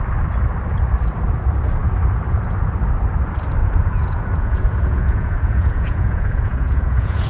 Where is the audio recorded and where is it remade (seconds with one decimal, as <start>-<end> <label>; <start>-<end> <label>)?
0.0-3.6 recorded; 3.6-7.3 remade